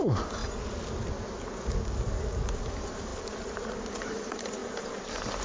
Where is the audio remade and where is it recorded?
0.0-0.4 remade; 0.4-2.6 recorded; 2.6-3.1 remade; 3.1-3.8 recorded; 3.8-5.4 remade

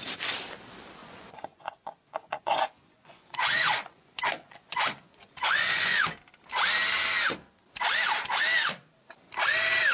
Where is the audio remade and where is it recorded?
0.0-1.0 recorded; 1.0-6.1 remade; 6.1-9.9 recorded

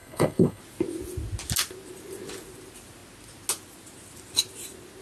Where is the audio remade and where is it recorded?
0.0-0.6 remade; 0.6-5.0 recorded

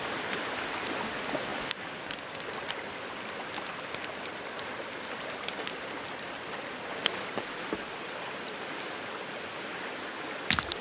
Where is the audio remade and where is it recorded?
0.0-10.8 recorded

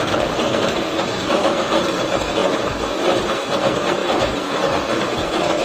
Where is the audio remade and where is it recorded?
0.0-5.6 remade

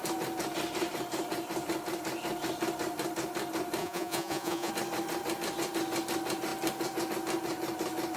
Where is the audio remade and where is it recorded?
0.0-3.8 recorded; 3.8-4.7 remade; 4.7-8.2 recorded